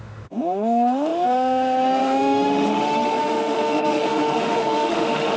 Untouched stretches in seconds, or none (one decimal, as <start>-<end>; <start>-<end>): none